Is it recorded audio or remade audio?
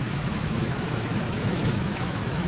remade